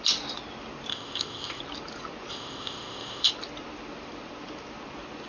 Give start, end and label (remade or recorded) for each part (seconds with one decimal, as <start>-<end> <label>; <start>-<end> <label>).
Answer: 0.0-0.9 recorded; 0.9-1.6 remade; 1.6-2.3 recorded; 2.3-3.3 remade; 3.3-5.3 recorded

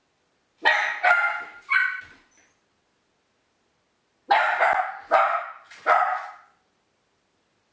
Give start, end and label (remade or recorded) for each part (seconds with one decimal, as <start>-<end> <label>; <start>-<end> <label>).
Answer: 0.0-7.7 recorded

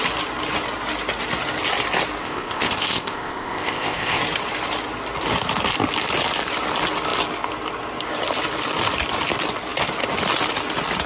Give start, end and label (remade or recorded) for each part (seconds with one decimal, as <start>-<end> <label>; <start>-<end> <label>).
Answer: 0.0-2.2 recorded; 2.2-4.2 remade; 4.2-11.1 recorded

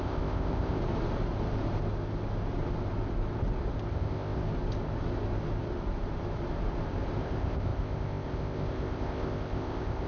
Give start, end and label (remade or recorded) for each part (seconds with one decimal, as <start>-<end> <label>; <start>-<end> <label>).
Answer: 0.0-0.8 remade; 0.8-3.9 recorded; 3.9-4.4 remade; 4.4-7.2 recorded; 7.2-10.1 remade

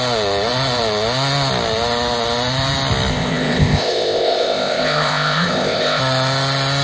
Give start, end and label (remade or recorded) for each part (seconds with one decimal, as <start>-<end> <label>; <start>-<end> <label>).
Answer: 0.0-3.1 recorded; 3.1-6.0 remade; 6.0-6.8 recorded